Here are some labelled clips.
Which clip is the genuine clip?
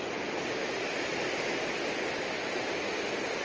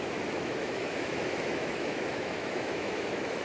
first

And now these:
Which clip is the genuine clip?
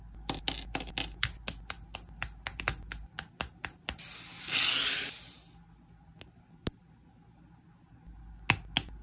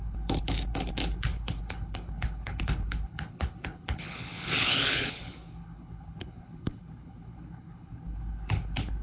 first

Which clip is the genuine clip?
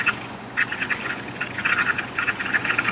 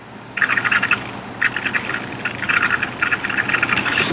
second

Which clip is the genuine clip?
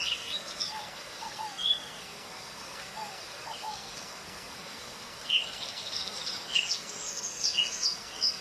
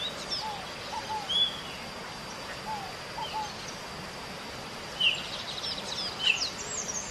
second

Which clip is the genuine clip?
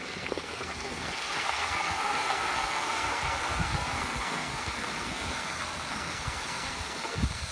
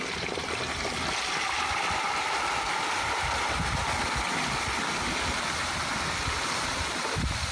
second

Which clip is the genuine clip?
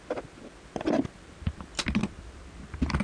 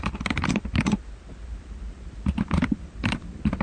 first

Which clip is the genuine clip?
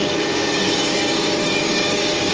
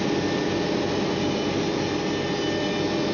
second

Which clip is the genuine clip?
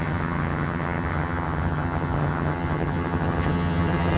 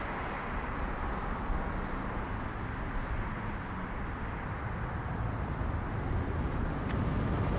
second